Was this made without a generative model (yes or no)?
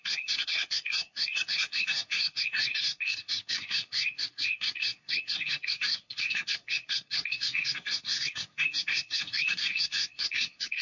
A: no